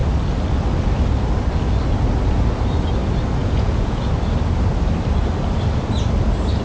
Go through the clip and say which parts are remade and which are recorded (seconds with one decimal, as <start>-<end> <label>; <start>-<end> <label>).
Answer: 0.0-3.4 recorded; 3.4-4.1 remade; 4.1-6.6 recorded

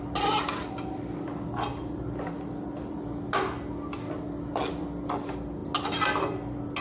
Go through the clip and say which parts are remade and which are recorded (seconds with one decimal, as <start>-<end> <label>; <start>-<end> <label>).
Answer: 0.0-6.8 recorded

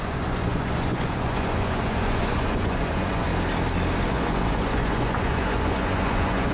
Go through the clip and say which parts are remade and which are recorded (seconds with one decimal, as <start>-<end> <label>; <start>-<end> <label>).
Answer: 0.0-3.3 remade; 3.3-4.1 recorded; 4.1-6.5 remade

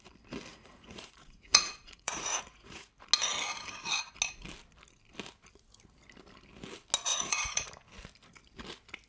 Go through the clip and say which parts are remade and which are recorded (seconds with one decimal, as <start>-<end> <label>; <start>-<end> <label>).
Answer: 0.0-0.5 recorded; 0.5-2.9 remade; 2.9-7.1 recorded; 7.1-7.7 remade; 7.7-9.1 recorded

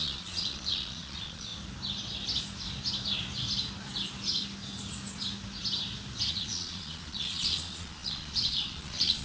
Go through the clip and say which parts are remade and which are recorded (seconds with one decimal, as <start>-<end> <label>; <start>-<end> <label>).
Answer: 0.0-1.5 remade; 1.5-6.3 recorded; 6.3-9.2 remade

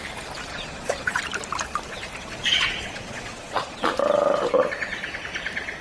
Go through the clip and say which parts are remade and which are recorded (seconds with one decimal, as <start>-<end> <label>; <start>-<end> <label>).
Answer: 0.0-0.5 recorded; 0.5-1.2 remade; 1.2-2.4 recorded; 2.4-3.9 remade; 3.9-5.8 recorded